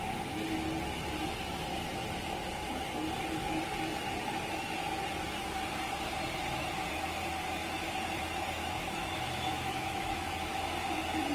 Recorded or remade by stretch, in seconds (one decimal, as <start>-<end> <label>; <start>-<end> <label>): 0.0-8.6 recorded; 8.6-10.6 remade; 10.6-11.3 recorded